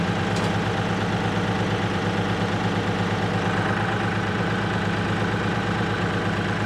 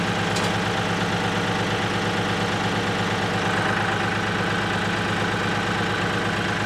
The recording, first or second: second